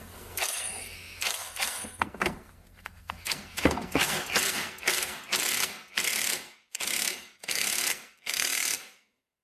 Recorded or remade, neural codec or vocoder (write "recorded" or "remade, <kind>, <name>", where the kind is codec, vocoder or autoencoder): remade, codec, SNAC